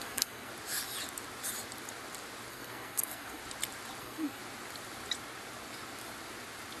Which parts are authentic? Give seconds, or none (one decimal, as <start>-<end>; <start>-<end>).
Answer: 0.5-2.5; 3.4-4.0; 4.4-6.8